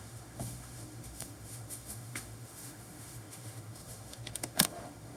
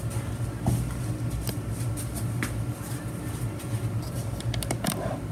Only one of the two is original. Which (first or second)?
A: second